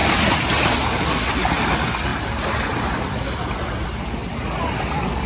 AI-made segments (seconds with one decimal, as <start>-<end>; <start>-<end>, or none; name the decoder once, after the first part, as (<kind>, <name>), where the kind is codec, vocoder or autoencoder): 2.1-3.3 (vocoder, BigVGAN v2)